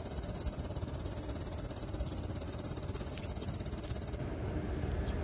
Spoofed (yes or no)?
no